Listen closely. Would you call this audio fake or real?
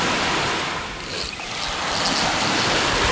real